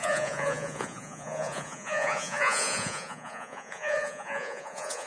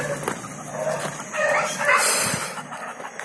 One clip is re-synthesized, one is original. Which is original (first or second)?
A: second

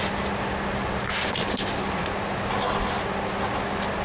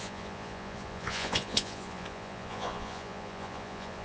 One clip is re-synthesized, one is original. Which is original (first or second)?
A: first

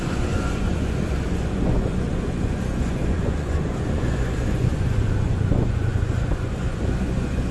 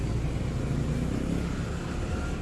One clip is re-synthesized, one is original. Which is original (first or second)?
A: second